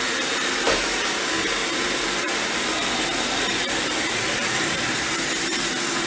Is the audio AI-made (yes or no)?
no